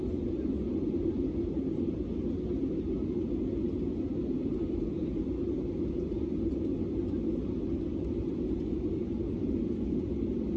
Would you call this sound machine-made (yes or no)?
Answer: no